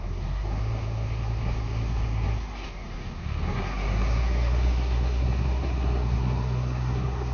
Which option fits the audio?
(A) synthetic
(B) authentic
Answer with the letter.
A